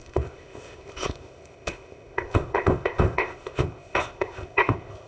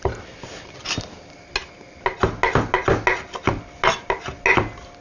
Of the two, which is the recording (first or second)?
second